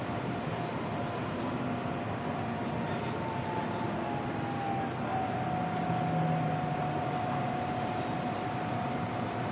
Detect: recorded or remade recorded